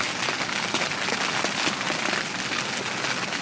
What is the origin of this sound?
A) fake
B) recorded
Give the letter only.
B